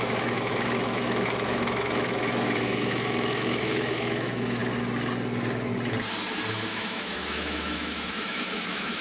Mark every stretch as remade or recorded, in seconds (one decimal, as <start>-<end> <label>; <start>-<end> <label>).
0.0-4.6 remade; 4.6-6.5 recorded; 6.5-9.0 remade